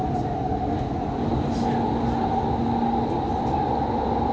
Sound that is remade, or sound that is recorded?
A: recorded